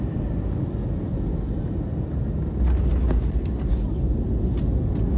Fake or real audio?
real